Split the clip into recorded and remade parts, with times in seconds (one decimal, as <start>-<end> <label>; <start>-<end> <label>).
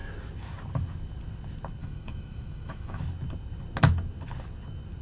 0.0-1.8 recorded; 1.8-3.0 remade; 3.0-5.0 recorded